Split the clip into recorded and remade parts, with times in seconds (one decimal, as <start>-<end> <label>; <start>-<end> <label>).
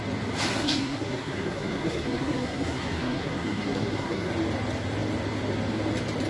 0.0-0.5 recorded; 0.5-4.3 remade; 4.3-6.3 recorded